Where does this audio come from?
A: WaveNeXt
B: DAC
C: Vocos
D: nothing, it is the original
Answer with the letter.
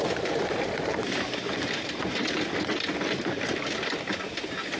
D